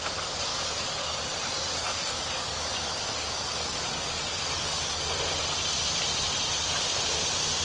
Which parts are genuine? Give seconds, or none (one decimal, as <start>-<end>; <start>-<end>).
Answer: 0.0-0.5; 1.2-1.9; 5.1-7.6